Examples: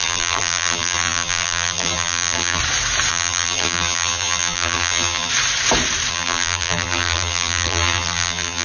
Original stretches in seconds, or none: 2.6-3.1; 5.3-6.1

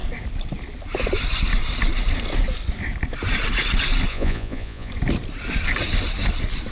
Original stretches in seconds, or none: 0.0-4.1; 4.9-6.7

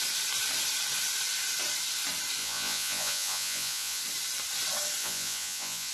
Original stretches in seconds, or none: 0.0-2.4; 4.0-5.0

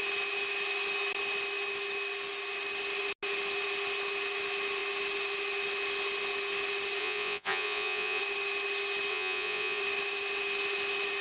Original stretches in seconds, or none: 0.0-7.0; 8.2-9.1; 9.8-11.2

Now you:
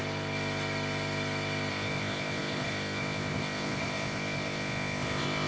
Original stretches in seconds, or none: 0.0-1.7